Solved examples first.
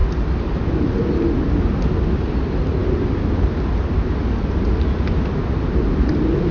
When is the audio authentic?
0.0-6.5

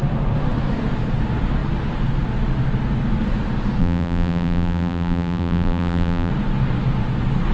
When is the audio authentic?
0.0-3.8; 6.3-7.5

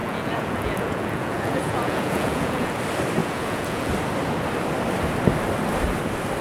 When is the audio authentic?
2.7-3.2; 3.9-6.4

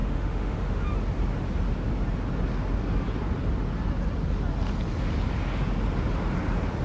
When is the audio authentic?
0.8-6.8

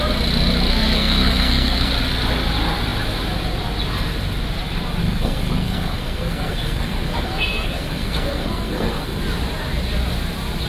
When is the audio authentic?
0.0-0.7; 1.9-5.0; 9.2-10.7